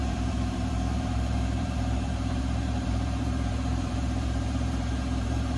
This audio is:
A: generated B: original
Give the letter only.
A